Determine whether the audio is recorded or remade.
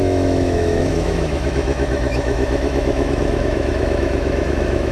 remade